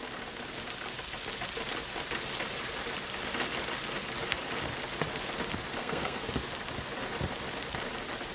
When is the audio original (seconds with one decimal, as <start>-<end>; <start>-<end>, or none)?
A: 0.0-5.8; 6.3-8.3